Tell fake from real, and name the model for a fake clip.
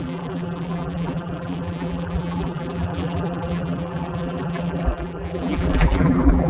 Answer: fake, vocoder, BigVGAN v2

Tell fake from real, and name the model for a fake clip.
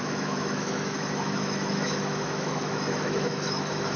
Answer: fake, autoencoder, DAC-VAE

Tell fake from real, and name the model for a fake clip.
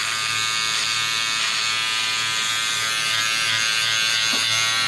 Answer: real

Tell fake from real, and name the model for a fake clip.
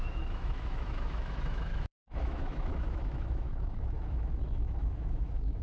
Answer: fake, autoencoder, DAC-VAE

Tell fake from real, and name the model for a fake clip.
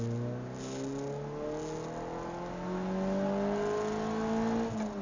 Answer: real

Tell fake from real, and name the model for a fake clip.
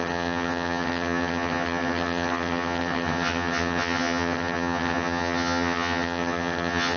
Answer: fake, vocoder, HiFi-GAN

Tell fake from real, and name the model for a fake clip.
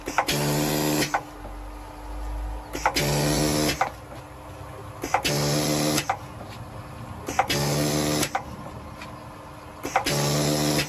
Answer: real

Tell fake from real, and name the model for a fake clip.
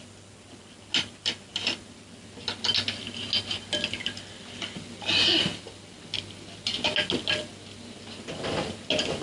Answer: real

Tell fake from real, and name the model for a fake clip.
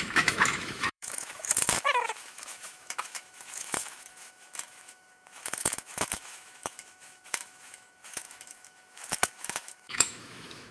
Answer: fake, autoencoder, DAC-VAE